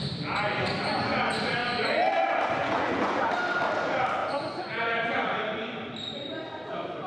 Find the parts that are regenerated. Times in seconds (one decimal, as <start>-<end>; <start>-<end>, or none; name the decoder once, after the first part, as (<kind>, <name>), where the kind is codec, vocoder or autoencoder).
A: 2.6-3.2 (vocoder, Vocos); 4.2-5.4